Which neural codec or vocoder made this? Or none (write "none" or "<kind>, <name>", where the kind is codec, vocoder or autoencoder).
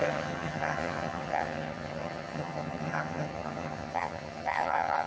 vocoder, HiFi-GAN